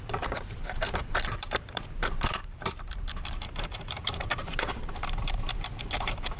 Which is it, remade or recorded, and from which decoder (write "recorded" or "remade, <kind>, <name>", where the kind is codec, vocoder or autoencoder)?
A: remade, vocoder, BigVGAN v2